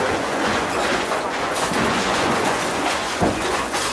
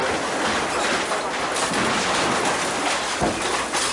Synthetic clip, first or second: first